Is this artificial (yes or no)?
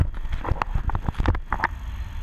no